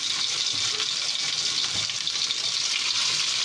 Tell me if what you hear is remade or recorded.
recorded